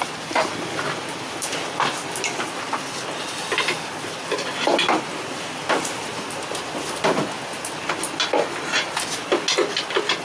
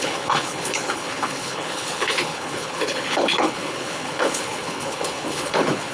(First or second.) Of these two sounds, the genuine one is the first